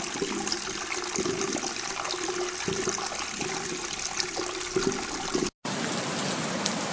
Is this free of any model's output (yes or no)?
yes